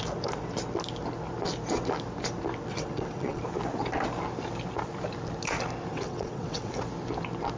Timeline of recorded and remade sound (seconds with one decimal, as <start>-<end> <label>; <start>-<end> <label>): 0.0-2.7 recorded; 2.7-3.4 remade; 3.4-5.9 recorded; 5.9-6.7 remade; 6.7-7.6 recorded